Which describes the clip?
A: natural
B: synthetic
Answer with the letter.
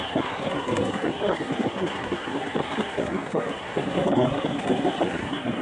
B